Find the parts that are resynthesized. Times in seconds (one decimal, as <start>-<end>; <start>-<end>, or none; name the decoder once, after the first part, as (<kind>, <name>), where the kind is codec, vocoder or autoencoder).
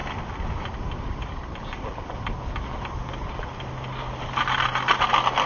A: none